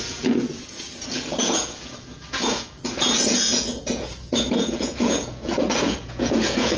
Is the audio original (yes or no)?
no